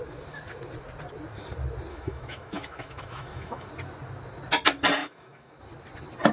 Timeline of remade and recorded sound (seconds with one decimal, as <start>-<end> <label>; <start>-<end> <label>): 0.0-1.9 recorded; 1.9-3.7 remade; 3.7-5.0 recorded; 5.0-5.6 remade; 5.6-6.3 recorded